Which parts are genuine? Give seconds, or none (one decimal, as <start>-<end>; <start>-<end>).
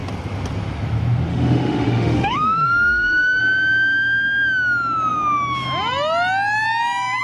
0.0-1.3; 3.4-7.2